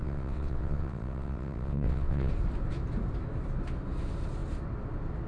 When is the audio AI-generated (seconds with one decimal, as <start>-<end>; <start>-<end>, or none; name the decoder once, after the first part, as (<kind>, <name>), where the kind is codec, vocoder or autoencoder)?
0.0-2.3 (vocoder, WaveNeXt)